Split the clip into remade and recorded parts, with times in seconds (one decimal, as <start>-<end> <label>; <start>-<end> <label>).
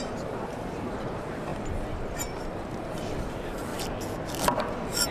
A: 0.0-3.7 remade; 3.7-5.1 recorded